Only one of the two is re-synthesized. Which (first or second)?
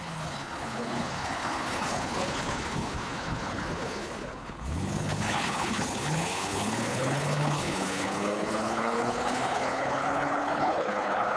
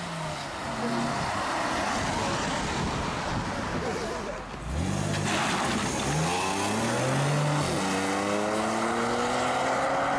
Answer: first